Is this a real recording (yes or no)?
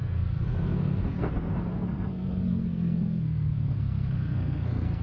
no